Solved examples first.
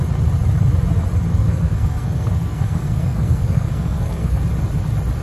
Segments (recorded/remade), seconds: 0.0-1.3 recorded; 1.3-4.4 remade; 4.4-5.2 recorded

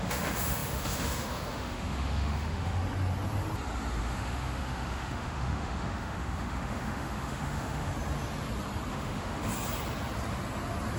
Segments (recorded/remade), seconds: 0.0-2.8 remade; 2.8-4.0 recorded; 4.0-7.9 remade; 7.9-8.9 recorded; 8.9-9.5 remade; 9.5-11.0 recorded

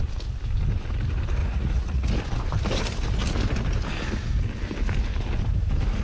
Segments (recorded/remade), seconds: 0.0-1.4 recorded; 1.4-2.1 remade; 2.1-6.0 recorded

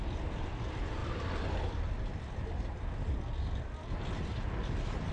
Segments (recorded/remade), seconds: 0.0-5.1 recorded

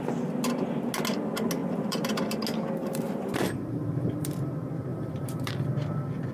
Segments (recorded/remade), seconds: 0.0-1.6 recorded; 1.6-2.4 remade; 2.4-2.8 recorded; 2.8-4.5 remade; 4.5-4.9 recorded; 4.9-5.5 remade; 5.5-6.3 recorded

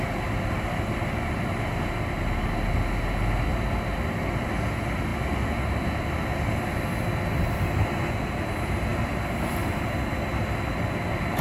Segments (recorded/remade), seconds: 0.0-11.4 recorded

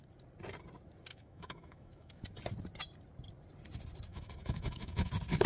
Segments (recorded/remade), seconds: 0.0-1.1 recorded; 1.1-2.2 remade; 2.2-4.1 recorded; 4.1-5.1 remade; 5.1-5.5 recorded